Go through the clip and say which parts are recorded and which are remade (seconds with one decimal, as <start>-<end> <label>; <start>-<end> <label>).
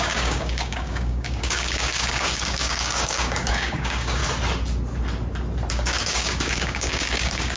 0.0-4.2 remade; 4.2-5.7 recorded; 5.7-7.6 remade